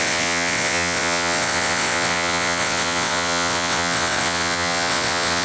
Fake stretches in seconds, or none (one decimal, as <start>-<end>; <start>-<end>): 0.0-5.4